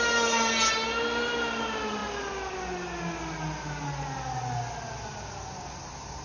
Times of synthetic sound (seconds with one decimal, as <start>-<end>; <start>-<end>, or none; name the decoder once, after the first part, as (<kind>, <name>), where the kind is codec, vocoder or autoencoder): none